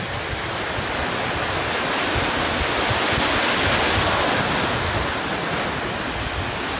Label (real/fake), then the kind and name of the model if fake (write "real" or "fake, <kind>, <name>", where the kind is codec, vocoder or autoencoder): real